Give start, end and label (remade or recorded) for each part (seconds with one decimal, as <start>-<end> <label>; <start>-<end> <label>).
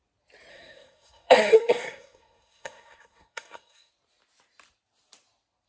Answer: 0.0-0.5 recorded; 0.5-3.9 remade; 3.9-5.7 recorded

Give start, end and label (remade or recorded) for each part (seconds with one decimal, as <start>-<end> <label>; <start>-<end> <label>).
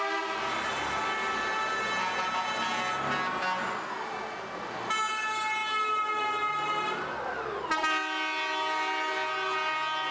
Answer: 0.0-10.1 recorded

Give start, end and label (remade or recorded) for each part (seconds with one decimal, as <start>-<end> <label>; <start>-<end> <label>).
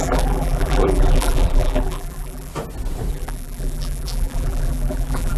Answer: 0.0-2.5 remade; 2.5-3.1 recorded; 3.1-5.4 remade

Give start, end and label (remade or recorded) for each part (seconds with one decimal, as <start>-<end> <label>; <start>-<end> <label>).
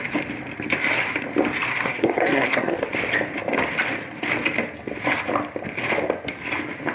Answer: 0.0-1.7 recorded; 1.7-2.9 remade; 2.9-6.9 recorded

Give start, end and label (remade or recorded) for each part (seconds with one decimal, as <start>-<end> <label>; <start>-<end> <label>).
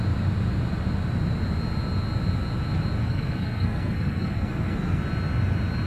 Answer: 0.0-3.0 recorded; 3.0-5.0 remade; 5.0-5.9 recorded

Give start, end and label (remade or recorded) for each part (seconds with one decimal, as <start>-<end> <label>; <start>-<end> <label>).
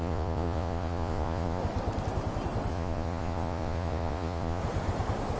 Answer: 0.0-1.6 remade; 1.6-2.7 recorded; 2.7-4.6 remade; 4.6-5.4 recorded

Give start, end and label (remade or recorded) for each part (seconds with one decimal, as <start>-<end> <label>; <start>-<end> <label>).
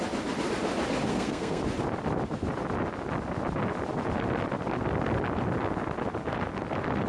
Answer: 0.0-1.1 recorded; 1.1-1.6 remade; 1.6-7.1 recorded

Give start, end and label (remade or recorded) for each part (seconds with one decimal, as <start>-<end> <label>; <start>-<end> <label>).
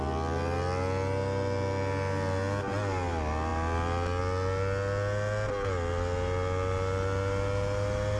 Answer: 0.0-8.2 recorded